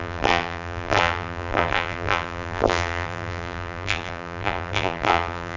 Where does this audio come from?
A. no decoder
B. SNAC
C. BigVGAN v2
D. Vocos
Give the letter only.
C